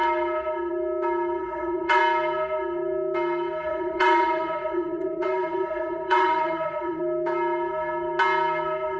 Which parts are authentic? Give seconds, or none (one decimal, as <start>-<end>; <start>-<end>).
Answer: 0.0-1.4; 2.0-3.7; 7.0-9.0

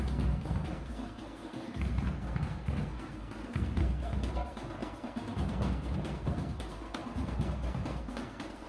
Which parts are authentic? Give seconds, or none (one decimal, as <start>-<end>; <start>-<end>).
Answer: none

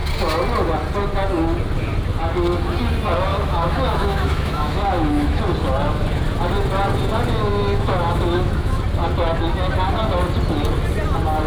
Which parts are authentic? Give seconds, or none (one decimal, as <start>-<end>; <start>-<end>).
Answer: 0.0-3.3; 5.4-7.5; 8.8-11.5

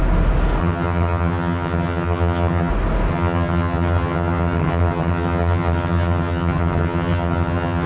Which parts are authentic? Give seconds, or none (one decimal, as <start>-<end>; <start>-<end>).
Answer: 0.0-0.6; 2.7-3.1

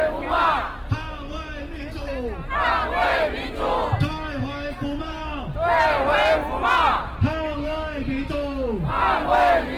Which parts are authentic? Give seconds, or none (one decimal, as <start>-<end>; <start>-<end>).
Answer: 0.0-3.0; 3.6-9.8